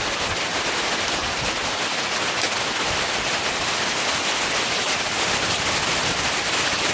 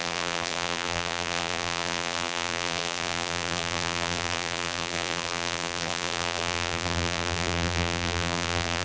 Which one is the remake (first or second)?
second